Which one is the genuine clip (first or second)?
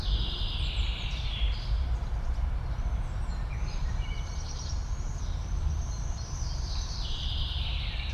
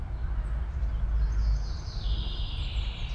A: second